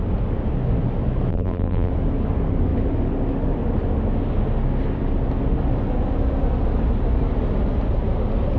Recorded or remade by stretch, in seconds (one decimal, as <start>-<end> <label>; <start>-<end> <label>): 0.0-1.3 recorded; 1.3-1.9 remade; 1.9-8.6 recorded